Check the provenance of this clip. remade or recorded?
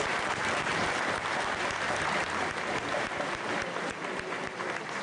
remade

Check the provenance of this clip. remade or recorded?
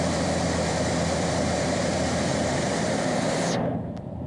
remade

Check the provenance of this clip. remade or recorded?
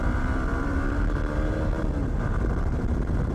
remade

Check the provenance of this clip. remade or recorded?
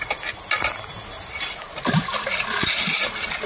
recorded